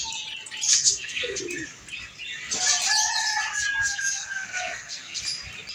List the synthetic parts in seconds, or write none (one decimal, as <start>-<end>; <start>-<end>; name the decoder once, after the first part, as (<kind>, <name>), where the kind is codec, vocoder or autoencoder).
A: 0.7-1.4 (codec, SNAC); 3.8-5.2

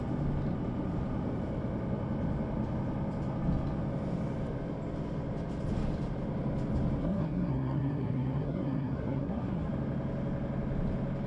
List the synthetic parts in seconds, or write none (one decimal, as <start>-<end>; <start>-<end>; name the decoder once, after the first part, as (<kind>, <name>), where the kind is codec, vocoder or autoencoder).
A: 7.0-9.7 (codec, SNAC)